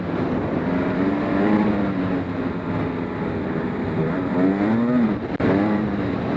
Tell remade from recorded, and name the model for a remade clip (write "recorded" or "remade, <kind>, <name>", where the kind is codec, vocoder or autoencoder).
remade, vocoder, BigVGAN v2